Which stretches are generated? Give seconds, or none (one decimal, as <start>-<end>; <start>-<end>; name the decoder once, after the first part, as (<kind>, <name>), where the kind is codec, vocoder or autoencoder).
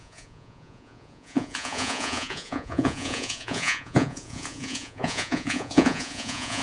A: 0.0-6.6 (vocoder, Vocos)